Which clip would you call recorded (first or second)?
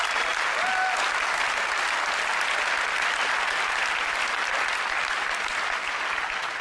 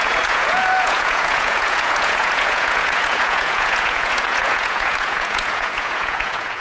first